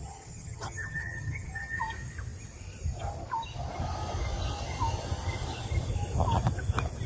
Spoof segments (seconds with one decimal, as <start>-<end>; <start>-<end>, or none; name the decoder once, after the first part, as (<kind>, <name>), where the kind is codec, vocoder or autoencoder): 0.0-1.8 (vocoder, HiFi-GAN)